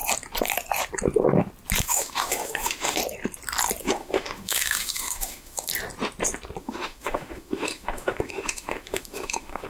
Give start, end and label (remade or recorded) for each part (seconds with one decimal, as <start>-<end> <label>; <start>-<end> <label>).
0.0-1.8 recorded; 1.8-3.0 remade; 3.0-3.8 recorded; 3.8-5.7 remade; 5.7-6.6 recorded; 6.6-9.7 remade